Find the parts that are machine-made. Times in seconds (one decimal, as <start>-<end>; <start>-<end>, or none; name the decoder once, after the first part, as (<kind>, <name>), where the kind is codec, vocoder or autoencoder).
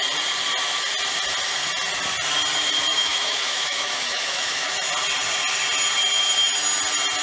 2.9-4.7 (autoencoder, DAC-VAE)